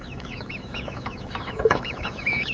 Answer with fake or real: fake